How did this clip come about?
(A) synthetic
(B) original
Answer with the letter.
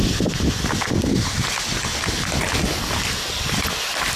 B